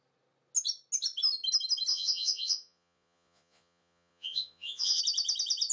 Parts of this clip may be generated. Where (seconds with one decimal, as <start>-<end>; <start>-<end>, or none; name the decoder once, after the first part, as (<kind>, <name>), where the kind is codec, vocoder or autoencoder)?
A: 1.9-5.0 (vocoder, Vocos)